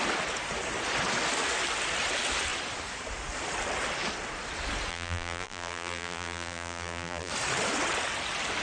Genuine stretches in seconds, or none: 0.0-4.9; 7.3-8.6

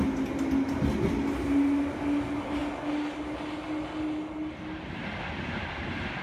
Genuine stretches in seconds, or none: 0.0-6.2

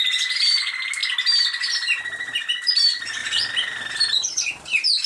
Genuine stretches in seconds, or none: 0.0-3.2